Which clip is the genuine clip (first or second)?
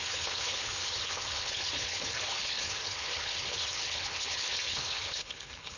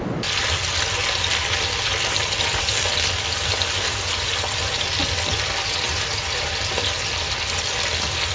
second